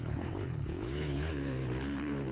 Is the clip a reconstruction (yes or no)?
yes